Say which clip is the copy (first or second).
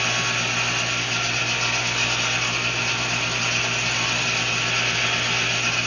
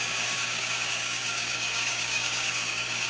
second